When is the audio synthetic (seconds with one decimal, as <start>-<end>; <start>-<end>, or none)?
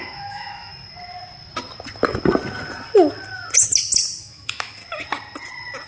0.0-0.7; 4.2-4.8